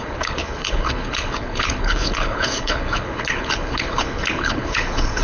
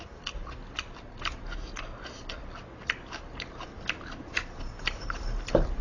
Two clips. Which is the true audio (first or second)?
second